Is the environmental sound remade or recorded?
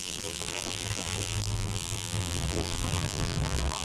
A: remade